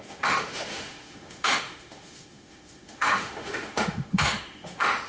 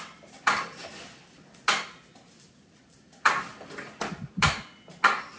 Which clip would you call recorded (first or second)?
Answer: second